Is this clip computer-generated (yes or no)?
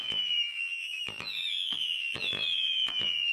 yes